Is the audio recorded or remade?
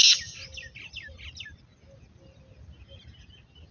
recorded